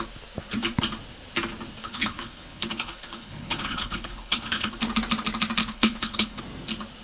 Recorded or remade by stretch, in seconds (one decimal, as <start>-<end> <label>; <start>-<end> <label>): 0.0-1.8 recorded; 1.8-4.7 remade; 4.7-5.6 recorded; 5.6-6.4 remade; 6.4-7.0 recorded